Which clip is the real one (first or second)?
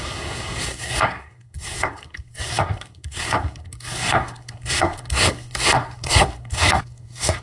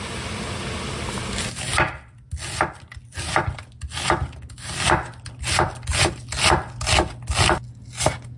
second